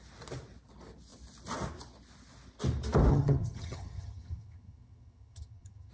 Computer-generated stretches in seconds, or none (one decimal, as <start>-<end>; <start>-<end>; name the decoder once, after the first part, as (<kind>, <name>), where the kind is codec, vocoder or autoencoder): 3.1-5.9 (vocoder, HiFi-GAN)